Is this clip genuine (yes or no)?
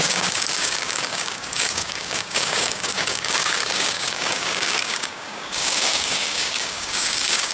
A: no